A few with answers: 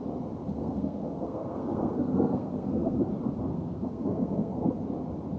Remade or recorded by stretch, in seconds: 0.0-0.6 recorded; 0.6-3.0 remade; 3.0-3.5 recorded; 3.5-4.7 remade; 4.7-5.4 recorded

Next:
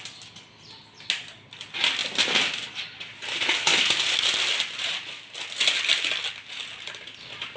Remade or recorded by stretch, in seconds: 0.0-7.6 recorded

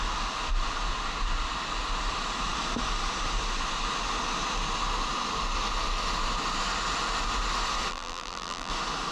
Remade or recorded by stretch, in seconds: 0.0-7.9 recorded; 7.9-8.7 remade; 8.7-9.1 recorded

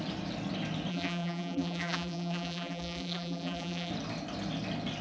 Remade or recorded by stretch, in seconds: 0.0-0.9 recorded; 0.9-3.9 remade; 3.9-5.0 recorded

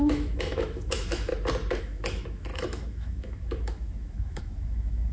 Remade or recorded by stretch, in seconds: 0.0-1.3 remade; 1.3-1.8 recorded; 1.8-5.1 remade

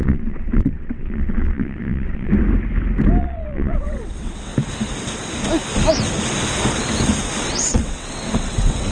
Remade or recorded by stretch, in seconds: 0.0-2.3 remade; 2.3-3.2 recorded; 3.2-4.5 remade; 4.5-7.4 recorded; 7.4-8.9 remade

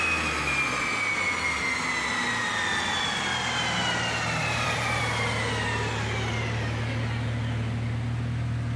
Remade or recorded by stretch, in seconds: 0.0-4.4 recorded; 4.4-5.0 remade; 5.0-8.8 recorded